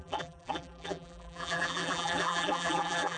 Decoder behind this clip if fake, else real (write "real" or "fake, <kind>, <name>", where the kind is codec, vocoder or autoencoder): fake, vocoder, BigVGAN v2